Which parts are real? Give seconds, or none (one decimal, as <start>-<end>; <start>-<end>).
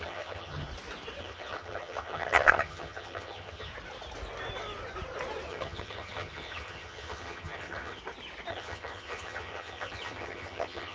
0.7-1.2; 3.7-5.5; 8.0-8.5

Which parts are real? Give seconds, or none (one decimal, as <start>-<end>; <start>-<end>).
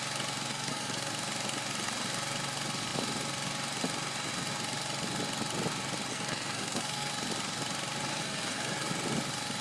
0.0-0.5; 1.1-6.1; 7.1-8.1; 8.9-9.6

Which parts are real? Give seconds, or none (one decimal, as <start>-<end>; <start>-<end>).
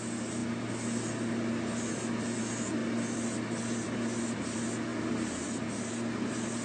0.0-6.6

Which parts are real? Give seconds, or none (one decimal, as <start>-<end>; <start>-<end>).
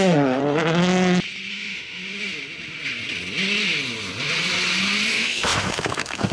0.4-1.5; 2.0-5.1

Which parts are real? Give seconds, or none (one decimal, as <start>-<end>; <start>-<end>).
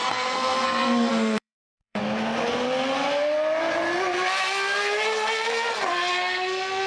2.0-6.1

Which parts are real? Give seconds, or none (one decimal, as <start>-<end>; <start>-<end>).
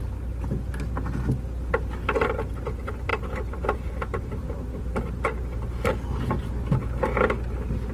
0.0-7.9